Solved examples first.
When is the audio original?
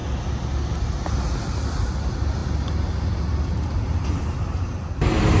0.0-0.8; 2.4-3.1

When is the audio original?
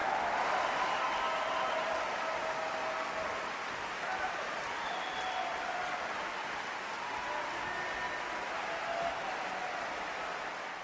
0.0-10.8